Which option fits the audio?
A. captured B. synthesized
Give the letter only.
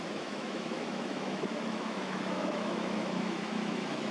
B